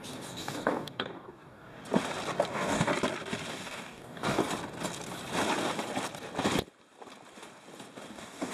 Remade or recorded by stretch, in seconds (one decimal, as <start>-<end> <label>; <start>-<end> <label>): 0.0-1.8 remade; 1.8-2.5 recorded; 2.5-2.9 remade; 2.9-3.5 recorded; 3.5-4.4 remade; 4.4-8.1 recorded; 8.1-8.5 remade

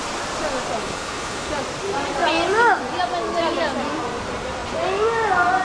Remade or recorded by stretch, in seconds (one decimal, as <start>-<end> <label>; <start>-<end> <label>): 0.0-0.8 recorded; 0.8-1.5 remade; 1.5-5.6 recorded

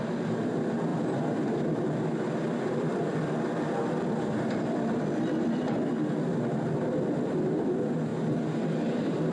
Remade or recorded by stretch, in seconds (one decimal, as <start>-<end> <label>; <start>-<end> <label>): 0.0-8.1 remade; 8.1-9.3 recorded

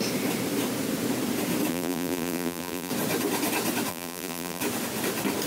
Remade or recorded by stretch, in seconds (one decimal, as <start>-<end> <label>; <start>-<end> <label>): 0.0-1.7 recorded; 1.7-2.9 remade; 2.9-3.9 recorded; 3.9-4.6 remade; 4.6-5.5 recorded